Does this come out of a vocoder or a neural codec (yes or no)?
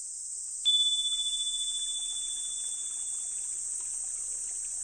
no